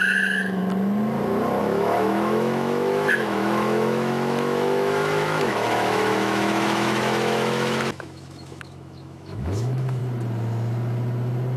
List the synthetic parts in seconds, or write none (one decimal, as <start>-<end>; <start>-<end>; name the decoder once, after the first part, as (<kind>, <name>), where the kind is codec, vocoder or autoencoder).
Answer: 0.0-0.6 (autoencoder, DAC-VAE); 1.6-10.0